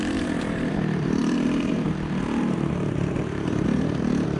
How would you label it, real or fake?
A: fake